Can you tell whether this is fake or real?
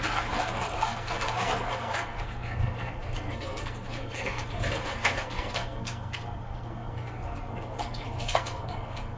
fake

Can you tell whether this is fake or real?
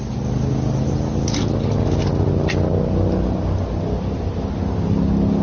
real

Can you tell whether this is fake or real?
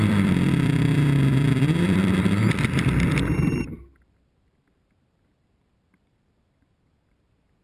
fake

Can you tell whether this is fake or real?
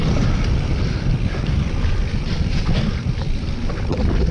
fake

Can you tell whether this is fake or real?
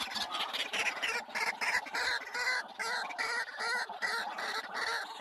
real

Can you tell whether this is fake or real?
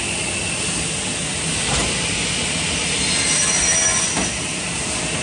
real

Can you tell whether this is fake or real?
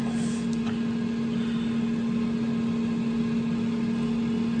real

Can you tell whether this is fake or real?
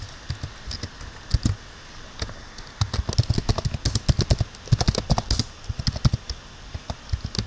real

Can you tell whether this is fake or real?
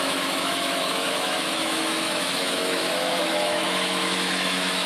fake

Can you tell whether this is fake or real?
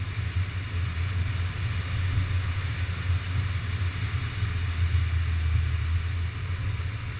real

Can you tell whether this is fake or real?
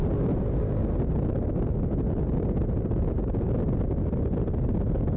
real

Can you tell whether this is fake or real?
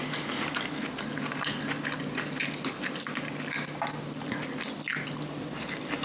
real